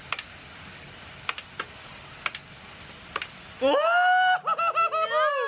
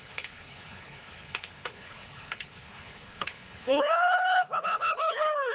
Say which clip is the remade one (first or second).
second